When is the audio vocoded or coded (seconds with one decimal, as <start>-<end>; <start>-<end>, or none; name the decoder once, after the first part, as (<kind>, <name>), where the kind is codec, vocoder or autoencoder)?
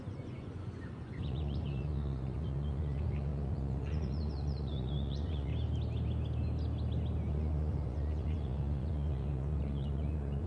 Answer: 0.0-5.5 (vocoder, Vocos); 7.3-10.5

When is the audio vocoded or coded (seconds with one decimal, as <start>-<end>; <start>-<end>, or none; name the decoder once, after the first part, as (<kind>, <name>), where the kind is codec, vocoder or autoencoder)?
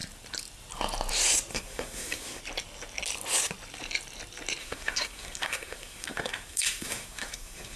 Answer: 1.5-2.4 (codec, SNAC); 4.6-7.8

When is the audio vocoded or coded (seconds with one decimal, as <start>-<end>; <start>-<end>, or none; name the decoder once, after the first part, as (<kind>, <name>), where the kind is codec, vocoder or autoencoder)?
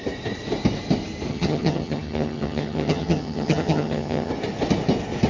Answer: 1.3-4.3 (vocoder, HiFi-GAN)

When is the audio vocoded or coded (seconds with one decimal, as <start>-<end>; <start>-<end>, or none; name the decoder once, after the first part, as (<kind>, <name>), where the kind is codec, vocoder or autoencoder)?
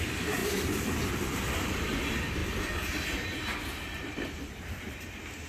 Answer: 0.0-5.5 (vocoder, BigVGAN v2)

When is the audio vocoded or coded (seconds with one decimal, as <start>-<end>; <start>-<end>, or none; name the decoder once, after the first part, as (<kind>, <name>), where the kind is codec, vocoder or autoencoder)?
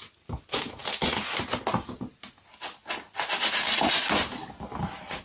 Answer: none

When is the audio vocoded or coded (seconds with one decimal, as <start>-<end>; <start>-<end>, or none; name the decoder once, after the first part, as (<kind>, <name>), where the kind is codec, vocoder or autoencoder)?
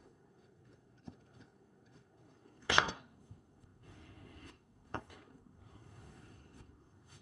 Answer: 0.0-7.2 (codec, SNAC)